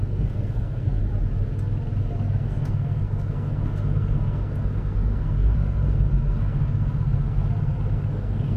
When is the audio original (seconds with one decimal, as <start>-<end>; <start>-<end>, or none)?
1.0-2.0